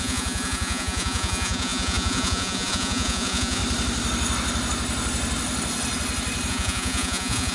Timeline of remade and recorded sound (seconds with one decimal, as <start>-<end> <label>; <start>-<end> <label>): 0.0-3.6 remade; 3.6-6.5 recorded; 6.5-7.5 remade